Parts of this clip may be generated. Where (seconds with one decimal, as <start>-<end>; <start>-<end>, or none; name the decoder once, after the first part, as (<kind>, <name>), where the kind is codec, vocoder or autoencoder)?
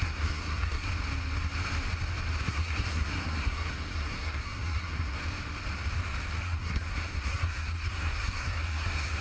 0.0-0.9 (codec, SNAC); 2.4-5.2; 6.4-9.2